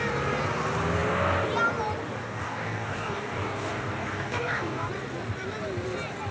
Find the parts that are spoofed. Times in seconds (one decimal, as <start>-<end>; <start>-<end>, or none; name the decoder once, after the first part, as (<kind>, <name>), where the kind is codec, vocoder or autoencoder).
2.2-4.9 (codec, DAC)